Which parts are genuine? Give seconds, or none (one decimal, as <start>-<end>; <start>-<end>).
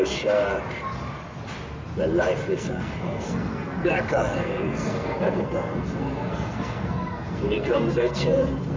0.5-2.5